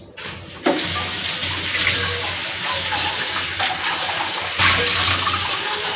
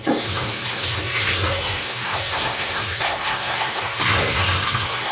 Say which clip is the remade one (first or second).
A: second